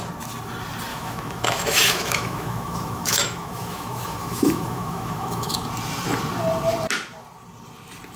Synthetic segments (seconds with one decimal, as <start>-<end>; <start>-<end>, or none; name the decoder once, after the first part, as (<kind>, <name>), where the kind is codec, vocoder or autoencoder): 0.9-5.7 (autoencoder, DAC-VAE)